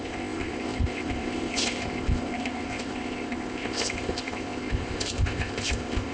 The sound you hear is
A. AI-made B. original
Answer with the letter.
A